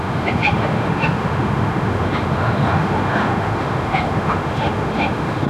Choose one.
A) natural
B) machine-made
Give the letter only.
B